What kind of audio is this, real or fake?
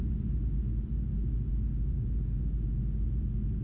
real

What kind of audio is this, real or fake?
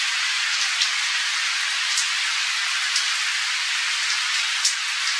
real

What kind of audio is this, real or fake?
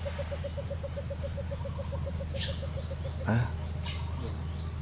real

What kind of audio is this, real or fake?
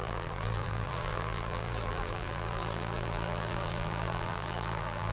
fake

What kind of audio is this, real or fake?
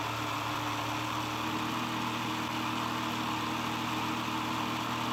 real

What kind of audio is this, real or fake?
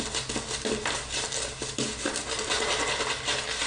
real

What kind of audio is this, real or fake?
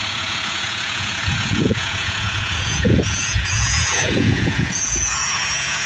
fake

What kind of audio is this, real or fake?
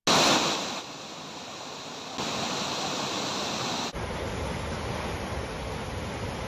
real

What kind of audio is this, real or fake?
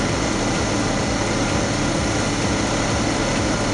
real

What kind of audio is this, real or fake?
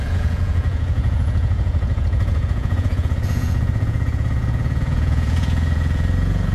fake